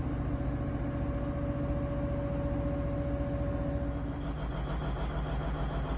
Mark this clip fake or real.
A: real